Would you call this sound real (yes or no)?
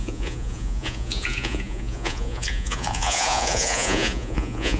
no